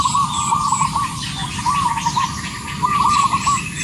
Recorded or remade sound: recorded